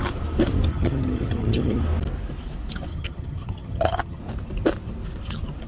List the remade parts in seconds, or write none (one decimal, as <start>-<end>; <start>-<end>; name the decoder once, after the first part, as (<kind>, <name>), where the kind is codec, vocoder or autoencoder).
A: 0.7-1.8 (vocoder, HiFi-GAN); 2.9-4.2